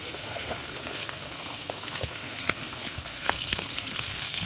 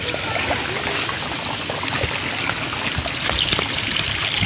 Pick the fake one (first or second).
first